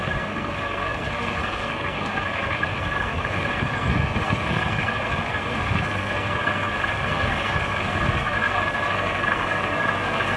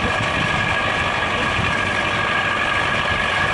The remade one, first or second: first